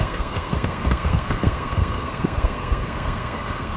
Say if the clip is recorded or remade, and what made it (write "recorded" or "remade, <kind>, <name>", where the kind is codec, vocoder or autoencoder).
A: remade, codec, SNAC